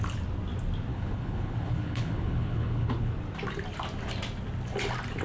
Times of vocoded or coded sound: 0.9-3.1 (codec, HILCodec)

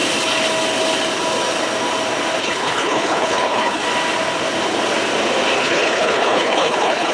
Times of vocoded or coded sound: 2.4-3.8 (codec, HILCodec); 5.6-7.1

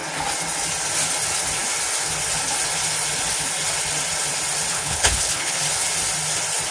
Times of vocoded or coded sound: 4.7-5.6 (codec, HILCodec)

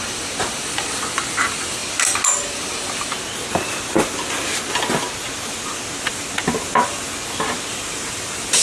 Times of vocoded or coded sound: none

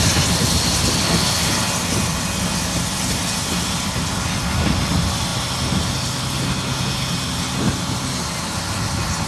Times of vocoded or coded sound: none

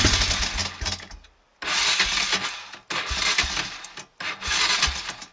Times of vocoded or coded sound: none

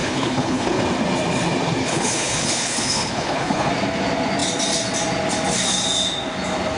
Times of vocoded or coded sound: 0.0-0.8 (codec, HILCodec); 1.8-3.7

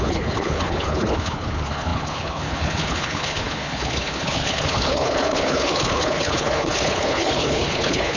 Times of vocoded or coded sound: 0.0-8.2 (codec, HILCodec)